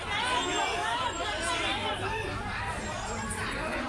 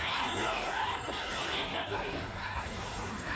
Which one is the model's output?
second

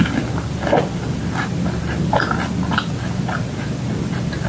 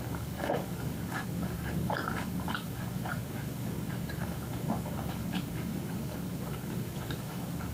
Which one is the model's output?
second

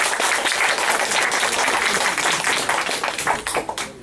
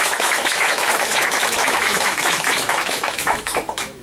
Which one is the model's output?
second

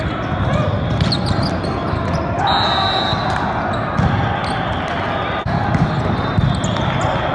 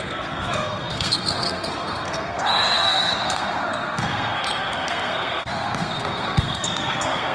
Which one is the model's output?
second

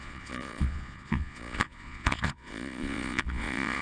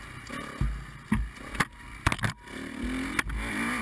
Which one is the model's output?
first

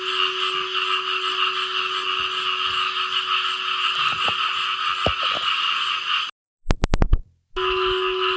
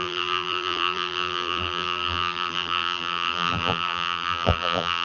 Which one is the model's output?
second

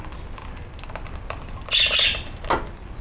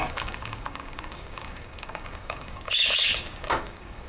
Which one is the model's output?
second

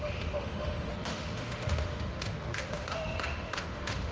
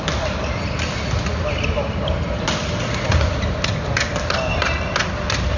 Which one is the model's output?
first